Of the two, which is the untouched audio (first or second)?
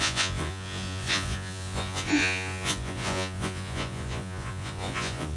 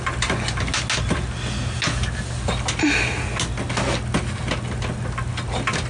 second